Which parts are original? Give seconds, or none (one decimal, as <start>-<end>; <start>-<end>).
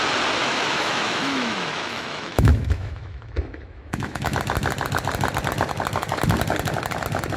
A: 0.0-0.4; 4.4-7.4